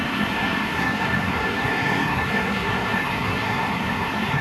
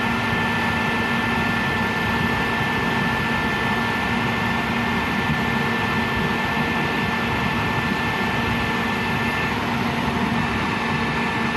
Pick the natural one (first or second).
second